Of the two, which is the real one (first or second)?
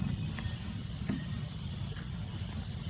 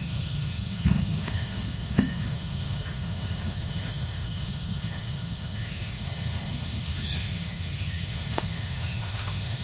first